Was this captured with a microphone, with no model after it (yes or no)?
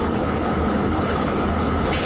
no